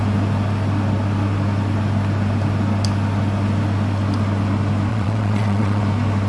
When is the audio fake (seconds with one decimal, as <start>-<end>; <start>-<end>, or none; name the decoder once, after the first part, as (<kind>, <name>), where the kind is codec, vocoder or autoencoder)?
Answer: 4.9-5.8 (vocoder, Vocos)